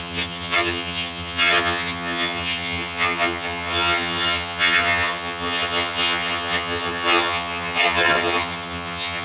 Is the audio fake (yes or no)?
yes